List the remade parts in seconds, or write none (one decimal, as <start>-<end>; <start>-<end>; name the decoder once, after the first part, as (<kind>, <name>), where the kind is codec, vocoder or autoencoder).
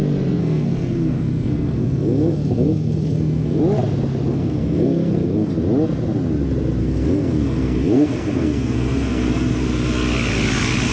0.4-3.6 (codec, SNAC); 4.3-5.5; 6.8-9.6